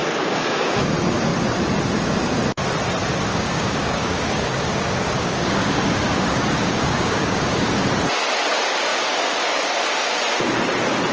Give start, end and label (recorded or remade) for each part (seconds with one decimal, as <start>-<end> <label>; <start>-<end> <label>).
0.0-0.9 remade; 0.9-3.3 recorded; 3.3-7.7 remade; 7.7-8.9 recorded; 8.9-9.7 remade; 9.7-11.1 recorded